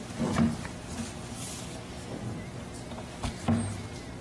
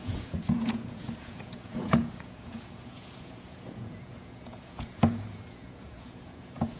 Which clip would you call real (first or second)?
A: first